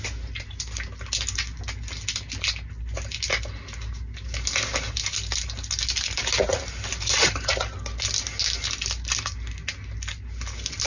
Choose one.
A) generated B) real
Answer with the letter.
B